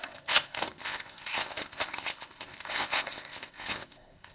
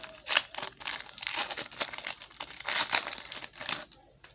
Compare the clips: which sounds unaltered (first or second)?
second